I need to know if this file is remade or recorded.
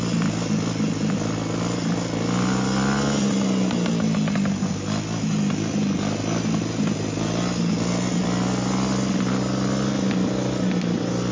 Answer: recorded